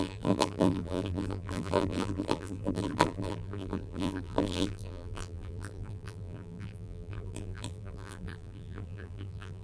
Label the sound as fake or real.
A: fake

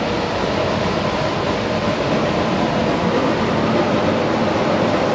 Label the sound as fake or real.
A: real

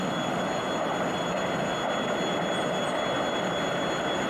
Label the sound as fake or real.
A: real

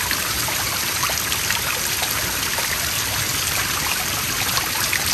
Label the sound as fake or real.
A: real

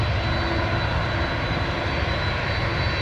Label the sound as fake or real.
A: real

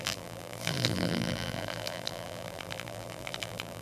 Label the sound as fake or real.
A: fake